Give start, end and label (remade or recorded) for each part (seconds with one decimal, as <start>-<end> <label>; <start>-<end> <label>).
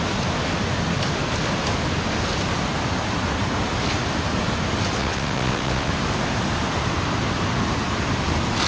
0.0-5.0 recorded; 5.0-5.9 remade; 5.9-8.7 recorded